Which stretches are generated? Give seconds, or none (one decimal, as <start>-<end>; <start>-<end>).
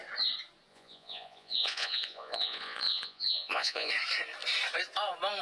0.7-3.9